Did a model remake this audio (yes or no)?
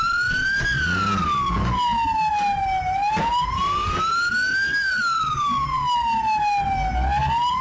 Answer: no